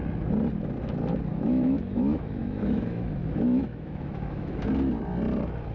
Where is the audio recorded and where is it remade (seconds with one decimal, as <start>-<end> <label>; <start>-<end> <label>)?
0.0-1.3 recorded; 1.3-4.7 remade; 4.7-5.7 recorded